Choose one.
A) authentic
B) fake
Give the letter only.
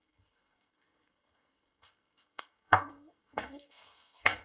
B